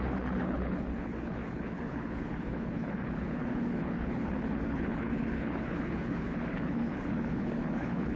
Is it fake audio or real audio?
fake